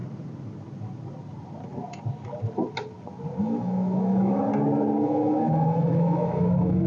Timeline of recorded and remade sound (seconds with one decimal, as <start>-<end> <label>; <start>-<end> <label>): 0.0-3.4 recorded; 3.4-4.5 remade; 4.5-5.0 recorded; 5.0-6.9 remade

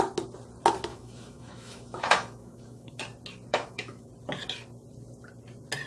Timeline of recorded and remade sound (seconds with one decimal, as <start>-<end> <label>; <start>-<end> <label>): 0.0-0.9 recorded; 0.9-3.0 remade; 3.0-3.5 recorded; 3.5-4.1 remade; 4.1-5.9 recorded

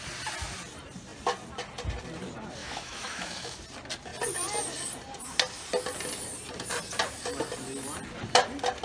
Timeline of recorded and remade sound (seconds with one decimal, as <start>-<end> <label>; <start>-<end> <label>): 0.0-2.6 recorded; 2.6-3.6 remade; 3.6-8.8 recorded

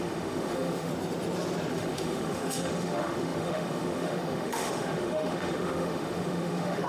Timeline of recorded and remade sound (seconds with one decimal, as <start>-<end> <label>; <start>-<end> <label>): 0.0-0.9 remade; 0.9-1.7 recorded; 1.7-6.9 remade

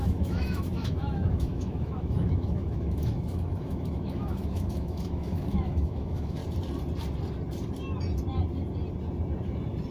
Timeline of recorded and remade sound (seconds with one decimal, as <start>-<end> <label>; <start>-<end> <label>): 0.0-6.4 remade; 6.4-9.9 recorded

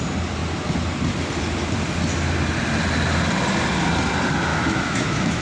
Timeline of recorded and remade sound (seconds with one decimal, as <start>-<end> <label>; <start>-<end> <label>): 0.0-4.5 recorded; 4.5-5.4 remade